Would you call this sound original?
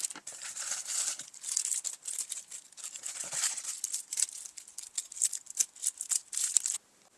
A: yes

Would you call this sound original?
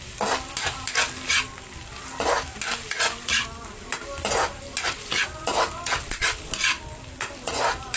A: yes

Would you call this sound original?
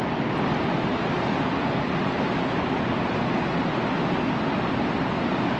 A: yes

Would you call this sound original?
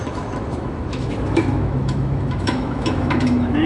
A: no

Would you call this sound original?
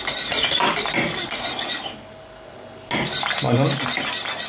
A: yes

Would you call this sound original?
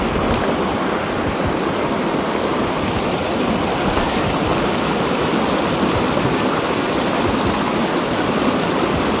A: yes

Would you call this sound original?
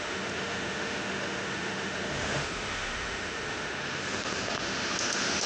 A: no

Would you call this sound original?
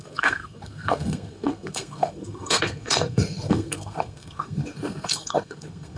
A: no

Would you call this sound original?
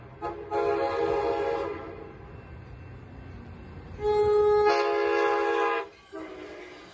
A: yes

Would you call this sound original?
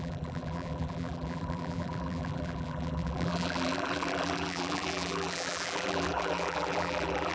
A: no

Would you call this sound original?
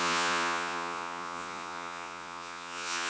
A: no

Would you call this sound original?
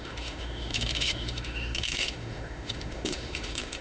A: no